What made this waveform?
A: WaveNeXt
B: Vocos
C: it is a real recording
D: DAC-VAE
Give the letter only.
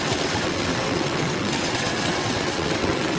A